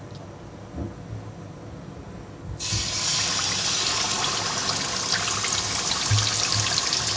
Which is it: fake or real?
real